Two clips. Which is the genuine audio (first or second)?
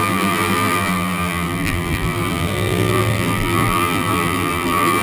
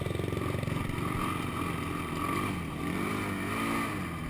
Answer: second